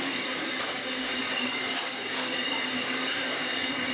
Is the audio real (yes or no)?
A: no